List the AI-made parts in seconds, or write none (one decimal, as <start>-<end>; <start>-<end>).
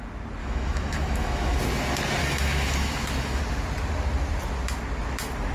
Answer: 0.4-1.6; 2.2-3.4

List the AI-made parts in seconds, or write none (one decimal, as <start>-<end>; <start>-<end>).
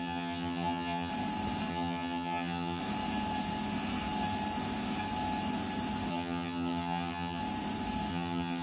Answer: 0.0-1.1; 1.7-2.8; 6.1-7.4; 8.1-8.6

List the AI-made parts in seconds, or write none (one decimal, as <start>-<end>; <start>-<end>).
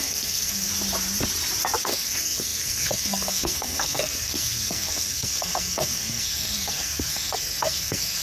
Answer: 0.0-0.7; 1.8-8.2